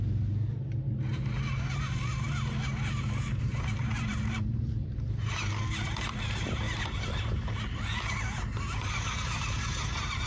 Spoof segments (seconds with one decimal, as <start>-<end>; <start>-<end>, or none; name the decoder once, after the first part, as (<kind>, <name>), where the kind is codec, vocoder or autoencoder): 0.0-10.3 (vocoder, BigVGAN v2)